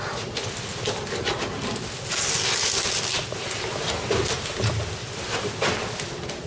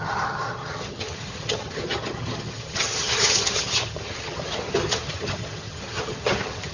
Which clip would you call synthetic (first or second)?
second